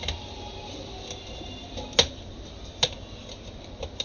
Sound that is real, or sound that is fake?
real